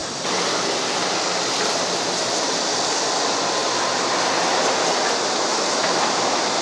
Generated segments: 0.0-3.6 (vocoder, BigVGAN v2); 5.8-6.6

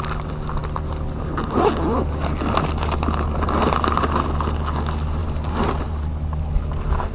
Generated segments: 5.2-6.1 (vocoder, BigVGAN v2)

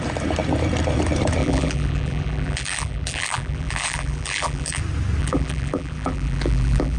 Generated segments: 1.4-4.8 (vocoder, BigVGAN v2); 5.2-7.0

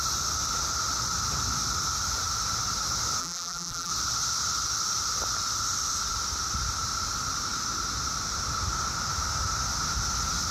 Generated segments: 3.2-3.9 (vocoder, BigVGAN v2)

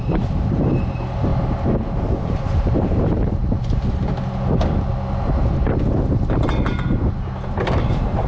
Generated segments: 0.0-1.3 (vocoder, BigVGAN v2); 2.0-3.4; 7.6-8.3